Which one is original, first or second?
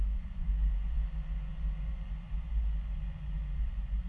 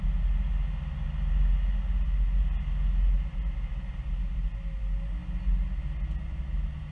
second